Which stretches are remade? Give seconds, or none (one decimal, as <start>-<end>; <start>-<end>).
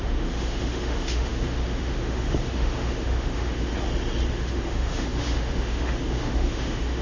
0.0-3.7; 4.3-7.0